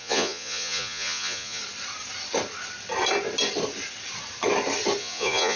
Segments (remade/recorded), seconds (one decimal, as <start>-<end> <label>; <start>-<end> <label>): 0.0-1.6 remade; 1.6-5.0 recorded; 5.0-5.6 remade

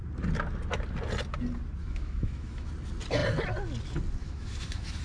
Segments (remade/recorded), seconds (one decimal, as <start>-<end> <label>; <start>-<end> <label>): 0.0-1.8 recorded; 1.8-2.7 remade; 2.7-4.2 recorded; 4.2-5.0 remade

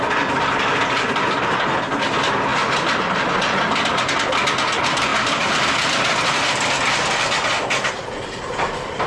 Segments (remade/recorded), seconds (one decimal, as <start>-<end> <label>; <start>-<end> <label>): 0.0-9.1 recorded

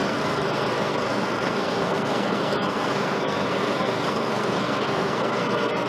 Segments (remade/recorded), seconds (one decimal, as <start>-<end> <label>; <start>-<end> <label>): 0.0-5.9 remade